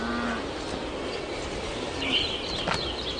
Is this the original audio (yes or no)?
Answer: yes